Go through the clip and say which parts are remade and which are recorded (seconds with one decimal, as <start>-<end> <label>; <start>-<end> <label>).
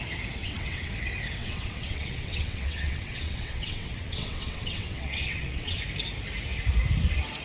0.0-0.4 recorded; 0.4-0.9 remade; 0.9-1.4 recorded; 1.4-5.8 remade; 5.8-7.4 recorded